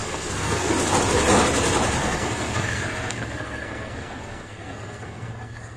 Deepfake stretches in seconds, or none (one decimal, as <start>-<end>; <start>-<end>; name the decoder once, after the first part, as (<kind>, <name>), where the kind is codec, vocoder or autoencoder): 0.0-0.7 (codec, SNAC); 2.0-5.8